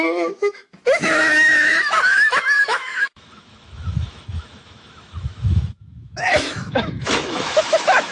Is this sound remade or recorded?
remade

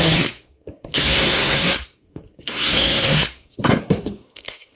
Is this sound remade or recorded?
remade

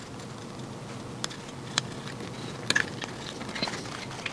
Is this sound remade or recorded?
recorded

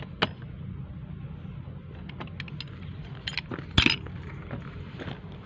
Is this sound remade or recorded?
recorded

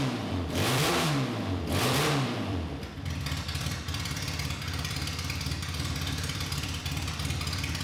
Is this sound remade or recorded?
remade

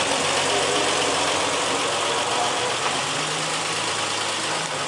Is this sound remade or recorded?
remade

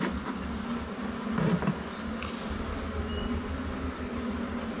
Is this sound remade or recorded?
recorded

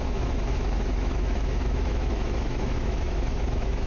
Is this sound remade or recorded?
remade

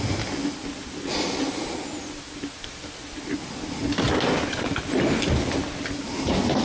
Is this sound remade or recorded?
recorded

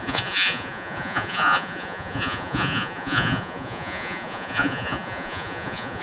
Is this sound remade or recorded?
remade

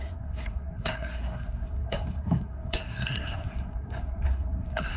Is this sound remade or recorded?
remade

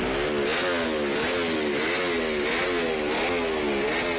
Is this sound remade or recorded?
recorded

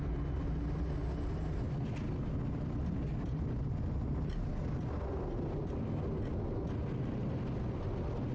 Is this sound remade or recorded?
recorded